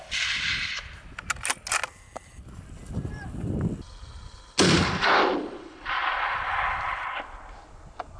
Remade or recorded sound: recorded